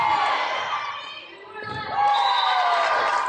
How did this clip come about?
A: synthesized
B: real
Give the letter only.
B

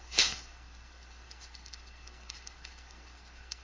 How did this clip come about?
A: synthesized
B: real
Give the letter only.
A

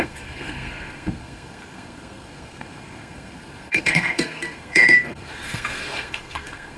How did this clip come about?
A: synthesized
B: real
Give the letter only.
A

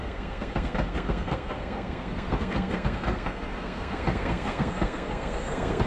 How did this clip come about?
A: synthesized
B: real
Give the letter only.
A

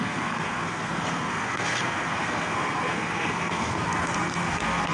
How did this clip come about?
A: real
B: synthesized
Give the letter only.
B